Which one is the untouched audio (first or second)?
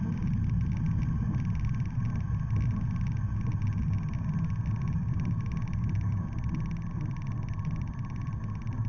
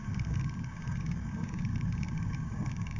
first